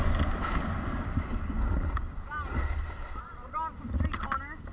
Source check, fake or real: real